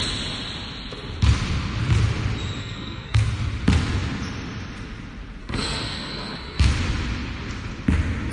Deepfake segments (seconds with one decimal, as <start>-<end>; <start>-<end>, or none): 2.6-3.3; 5.4-6.7